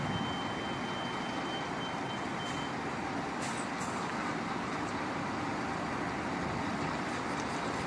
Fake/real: real